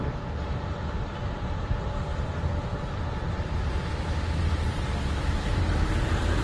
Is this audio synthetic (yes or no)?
no